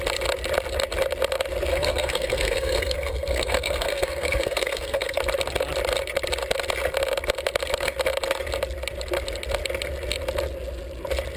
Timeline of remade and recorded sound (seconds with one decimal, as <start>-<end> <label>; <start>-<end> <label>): 0.0-1.7 recorded; 1.7-5.2 remade; 5.2-11.4 recorded